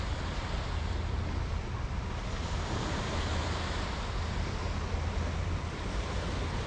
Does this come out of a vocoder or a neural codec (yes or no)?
no